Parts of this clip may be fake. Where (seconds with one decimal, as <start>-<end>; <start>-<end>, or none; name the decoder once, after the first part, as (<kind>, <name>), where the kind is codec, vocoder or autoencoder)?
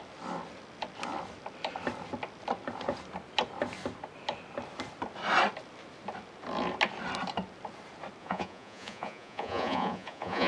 8.2-10.5 (vocoder, Vocos)